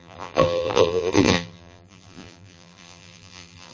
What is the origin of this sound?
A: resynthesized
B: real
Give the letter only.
A